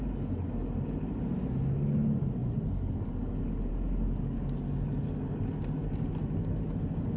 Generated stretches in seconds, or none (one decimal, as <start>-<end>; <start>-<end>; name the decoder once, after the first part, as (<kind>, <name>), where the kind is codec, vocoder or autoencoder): none